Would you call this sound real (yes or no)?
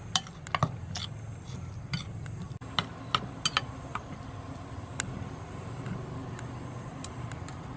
yes